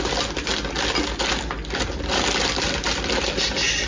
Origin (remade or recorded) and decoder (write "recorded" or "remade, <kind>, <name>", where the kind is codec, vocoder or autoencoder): recorded